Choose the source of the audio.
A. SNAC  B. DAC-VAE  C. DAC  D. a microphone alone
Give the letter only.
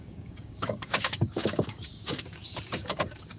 C